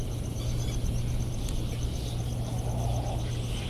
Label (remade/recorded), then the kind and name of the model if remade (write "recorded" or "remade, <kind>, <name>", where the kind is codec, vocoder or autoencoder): recorded